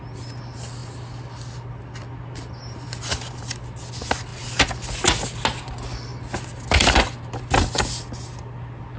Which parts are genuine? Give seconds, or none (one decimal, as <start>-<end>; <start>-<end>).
0.0-9.0